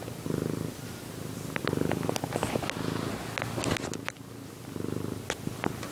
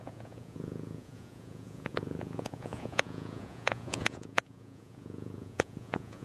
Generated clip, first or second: second